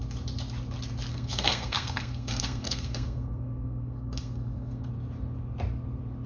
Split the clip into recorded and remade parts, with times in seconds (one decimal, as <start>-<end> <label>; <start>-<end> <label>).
0.0-1.1 recorded; 1.1-4.9 remade; 4.9-6.3 recorded